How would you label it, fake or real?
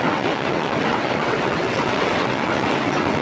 fake